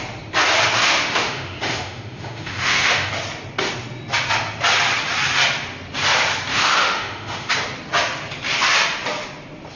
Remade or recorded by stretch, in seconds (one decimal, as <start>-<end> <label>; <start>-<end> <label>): 0.0-0.8 recorded; 0.8-3.1 remade; 3.1-6.5 recorded; 6.5-7.5 remade; 7.5-9.8 recorded